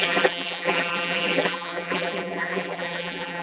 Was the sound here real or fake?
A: fake